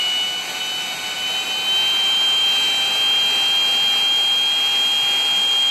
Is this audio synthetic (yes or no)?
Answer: no